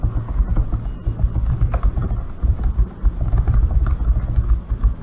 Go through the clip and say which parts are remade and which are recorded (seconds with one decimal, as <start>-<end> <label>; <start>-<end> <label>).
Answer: 0.0-5.0 recorded